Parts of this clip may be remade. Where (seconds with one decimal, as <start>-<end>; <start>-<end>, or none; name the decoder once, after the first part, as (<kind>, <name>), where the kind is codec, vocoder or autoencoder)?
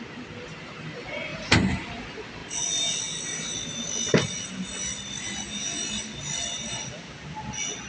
1.3-2.0 (vocoder, BigVGAN v2)